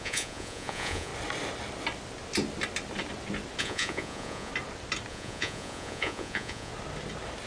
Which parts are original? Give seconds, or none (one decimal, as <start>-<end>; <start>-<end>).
1.1-3.6; 4.5-5.1; 6.7-7.5